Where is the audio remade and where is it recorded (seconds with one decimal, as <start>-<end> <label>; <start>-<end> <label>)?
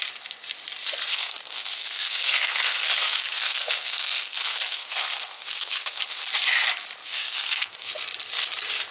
0.0-1.1 recorded; 1.1-6.3 remade; 6.3-7.0 recorded; 7.0-7.9 remade; 7.9-8.9 recorded